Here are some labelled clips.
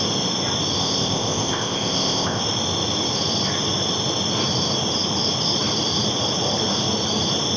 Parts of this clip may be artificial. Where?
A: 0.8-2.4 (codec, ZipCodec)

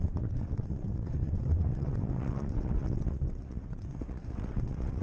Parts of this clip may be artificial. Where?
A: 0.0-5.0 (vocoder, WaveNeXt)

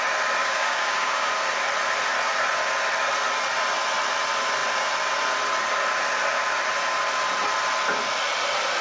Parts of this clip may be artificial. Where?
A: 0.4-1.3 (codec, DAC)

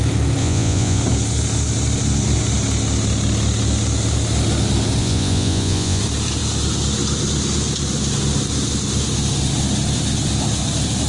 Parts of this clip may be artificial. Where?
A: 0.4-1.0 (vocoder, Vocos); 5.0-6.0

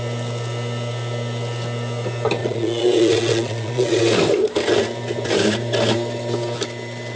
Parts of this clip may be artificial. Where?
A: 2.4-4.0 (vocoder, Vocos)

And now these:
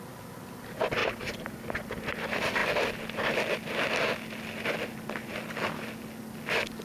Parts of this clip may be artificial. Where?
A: 1.0-1.6 (vocoder, BigVGAN v2)

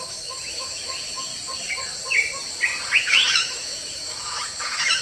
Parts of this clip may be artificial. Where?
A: 0.0-1.3 (autoencoder, DAC-VAE); 3.0-5.0

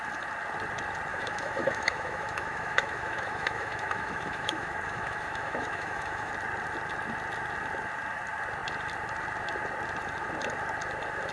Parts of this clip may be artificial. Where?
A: 1.1-6.3 (autoencoder, DAC-VAE)